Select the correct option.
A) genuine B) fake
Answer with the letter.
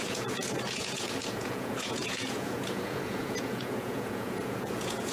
B